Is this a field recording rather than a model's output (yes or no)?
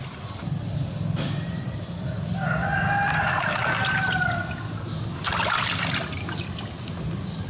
yes